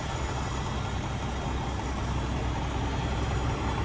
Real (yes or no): yes